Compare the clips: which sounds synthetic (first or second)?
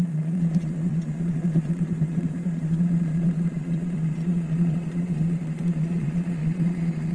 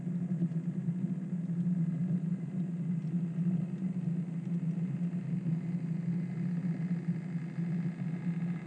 first